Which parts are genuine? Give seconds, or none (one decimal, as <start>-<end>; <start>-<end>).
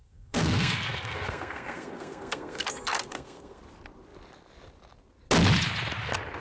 3.6-6.4